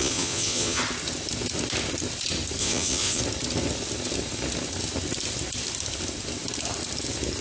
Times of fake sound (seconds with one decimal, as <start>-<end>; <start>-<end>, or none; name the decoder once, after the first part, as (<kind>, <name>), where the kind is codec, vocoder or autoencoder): 0.0-0.8 (vocoder, Vocos); 2.6-3.2